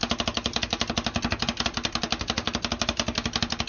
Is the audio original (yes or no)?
yes